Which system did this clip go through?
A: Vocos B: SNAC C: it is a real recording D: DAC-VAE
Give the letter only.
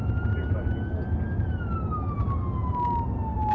C